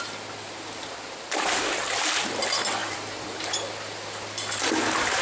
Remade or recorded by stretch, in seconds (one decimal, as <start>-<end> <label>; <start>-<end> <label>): 0.0-5.2 recorded

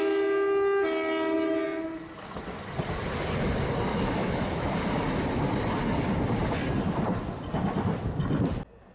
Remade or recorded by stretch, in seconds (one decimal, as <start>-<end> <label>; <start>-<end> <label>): 0.0-3.9 recorded; 3.9-4.7 remade; 4.7-8.9 recorded

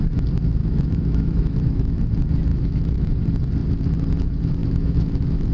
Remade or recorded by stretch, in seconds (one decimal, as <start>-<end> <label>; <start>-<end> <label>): 0.0-0.6 recorded; 0.6-2.0 remade; 2.0-2.5 recorded; 2.5-3.1 remade; 3.1-4.6 recorded; 4.6-5.5 remade

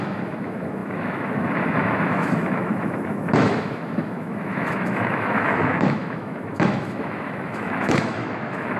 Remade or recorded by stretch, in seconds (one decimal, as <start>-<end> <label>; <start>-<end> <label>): 0.0-8.8 remade

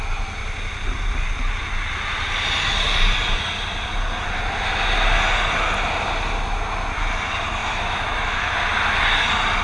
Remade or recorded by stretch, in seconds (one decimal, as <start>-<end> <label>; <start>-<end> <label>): 0.0-7.6 recorded; 7.6-8.5 remade; 8.5-9.6 recorded